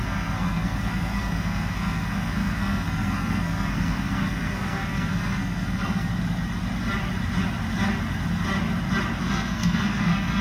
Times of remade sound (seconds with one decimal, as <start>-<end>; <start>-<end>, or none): 0.0-6.1; 9.2-10.4

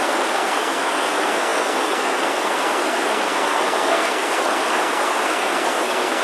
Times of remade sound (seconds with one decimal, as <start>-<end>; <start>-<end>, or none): 0.0-6.2

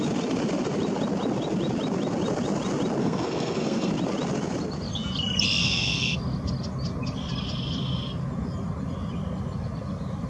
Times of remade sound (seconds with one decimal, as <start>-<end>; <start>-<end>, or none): 3.0-3.9; 5.6-6.2